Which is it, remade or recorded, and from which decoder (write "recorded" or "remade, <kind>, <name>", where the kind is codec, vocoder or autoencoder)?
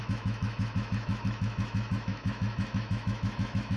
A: remade, autoencoder, DAC-VAE